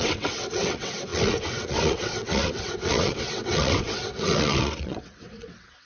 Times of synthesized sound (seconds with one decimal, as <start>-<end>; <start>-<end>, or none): 0.0-5.9